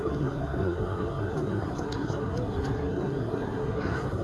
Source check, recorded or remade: remade